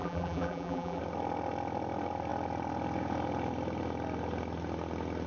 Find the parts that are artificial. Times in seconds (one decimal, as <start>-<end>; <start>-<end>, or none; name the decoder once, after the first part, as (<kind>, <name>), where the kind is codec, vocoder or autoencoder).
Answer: 0.0-1.0 (vocoder, BigVGAN v2)